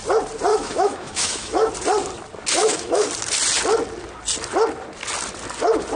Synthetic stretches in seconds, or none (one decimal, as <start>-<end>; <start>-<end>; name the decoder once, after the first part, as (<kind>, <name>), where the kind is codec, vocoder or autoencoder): 0.5-1.7 (autoencoder, DAC-VAE); 2.6-3.1